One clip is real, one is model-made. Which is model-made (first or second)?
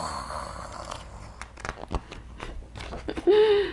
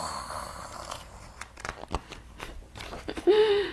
second